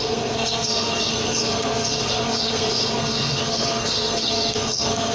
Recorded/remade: remade